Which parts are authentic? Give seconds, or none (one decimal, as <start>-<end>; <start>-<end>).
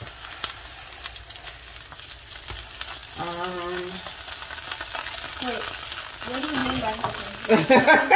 0.0-8.2